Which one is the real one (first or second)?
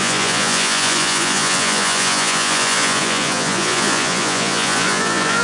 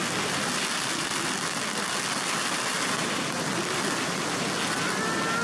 second